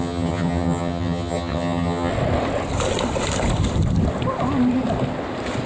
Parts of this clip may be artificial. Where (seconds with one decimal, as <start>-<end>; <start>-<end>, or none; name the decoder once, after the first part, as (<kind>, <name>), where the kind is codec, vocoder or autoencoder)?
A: 0.0-2.1 (vocoder, HiFi-GAN)